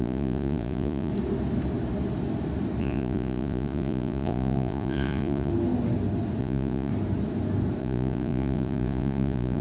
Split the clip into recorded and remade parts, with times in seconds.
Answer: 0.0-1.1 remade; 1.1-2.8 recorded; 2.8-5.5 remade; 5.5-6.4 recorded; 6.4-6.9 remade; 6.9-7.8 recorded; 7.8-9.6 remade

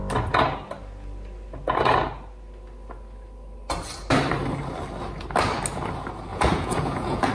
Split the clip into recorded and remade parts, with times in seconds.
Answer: 0.0-6.3 recorded; 6.3-7.3 remade

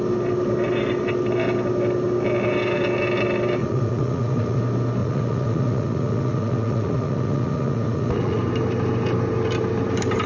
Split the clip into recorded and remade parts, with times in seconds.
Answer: 0.0-3.6 recorded; 3.6-4.6 remade; 4.6-5.0 recorded; 5.0-8.4 remade; 8.4-10.3 recorded

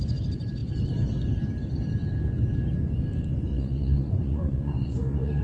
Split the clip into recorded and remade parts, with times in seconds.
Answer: 0.0-3.5 recorded; 3.5-5.4 remade